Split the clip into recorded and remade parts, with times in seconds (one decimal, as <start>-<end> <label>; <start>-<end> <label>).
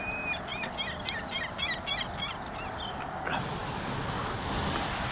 0.0-5.1 recorded